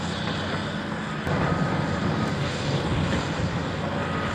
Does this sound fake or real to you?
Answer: real